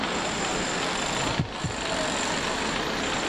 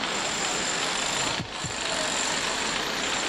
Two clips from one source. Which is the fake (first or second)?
second